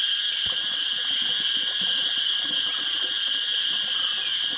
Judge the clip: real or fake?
real